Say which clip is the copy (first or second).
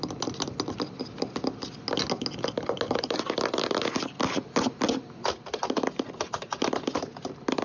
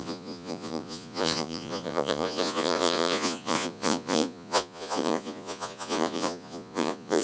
second